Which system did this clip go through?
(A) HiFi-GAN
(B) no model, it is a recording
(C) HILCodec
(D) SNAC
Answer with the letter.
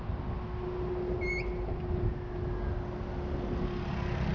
B